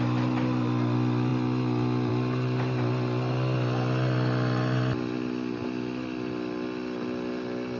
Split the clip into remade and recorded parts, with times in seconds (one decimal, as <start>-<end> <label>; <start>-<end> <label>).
0.0-7.8 recorded